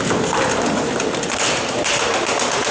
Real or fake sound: real